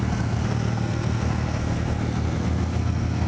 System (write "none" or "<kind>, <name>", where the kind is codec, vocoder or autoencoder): codec, SNAC